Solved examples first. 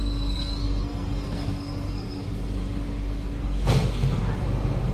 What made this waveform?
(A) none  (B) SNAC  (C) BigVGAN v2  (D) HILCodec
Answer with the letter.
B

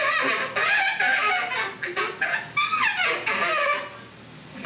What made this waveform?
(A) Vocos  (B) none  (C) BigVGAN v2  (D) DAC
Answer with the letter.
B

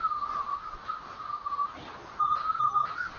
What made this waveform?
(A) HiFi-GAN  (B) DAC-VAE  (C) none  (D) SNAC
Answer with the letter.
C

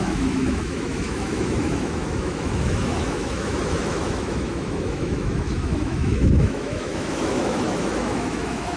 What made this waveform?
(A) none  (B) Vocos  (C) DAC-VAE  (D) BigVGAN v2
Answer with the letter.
C